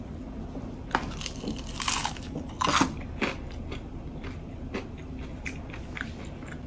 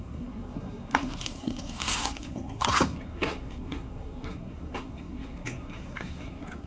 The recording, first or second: first